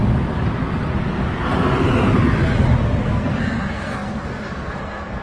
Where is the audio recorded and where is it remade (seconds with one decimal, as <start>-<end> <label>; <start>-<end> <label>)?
0.0-3.0 recorded; 3.0-5.2 remade